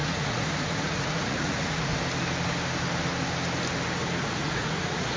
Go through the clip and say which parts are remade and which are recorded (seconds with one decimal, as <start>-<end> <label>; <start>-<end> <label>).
0.0-1.9 remade; 1.9-4.2 recorded; 4.2-5.2 remade